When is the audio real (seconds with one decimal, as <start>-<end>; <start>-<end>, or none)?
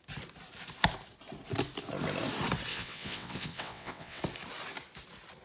0.0-2.7; 4.2-5.4